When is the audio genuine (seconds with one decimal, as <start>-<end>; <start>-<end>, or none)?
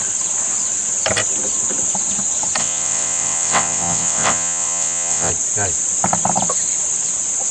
0.0-2.6; 5.3-7.5